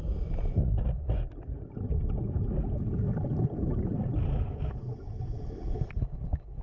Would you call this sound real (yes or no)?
yes